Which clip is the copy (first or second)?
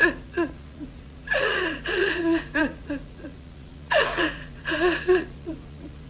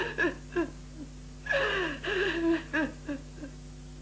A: first